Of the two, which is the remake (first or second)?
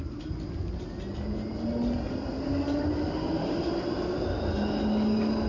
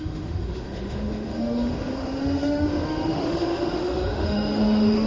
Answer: second